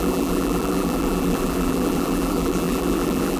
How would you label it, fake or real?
fake